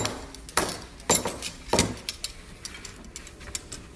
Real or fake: real